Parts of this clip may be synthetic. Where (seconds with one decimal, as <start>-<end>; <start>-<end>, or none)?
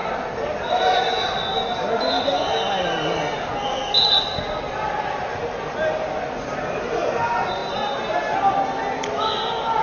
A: none